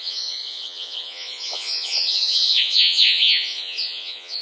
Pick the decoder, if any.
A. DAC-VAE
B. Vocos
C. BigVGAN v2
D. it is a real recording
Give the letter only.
B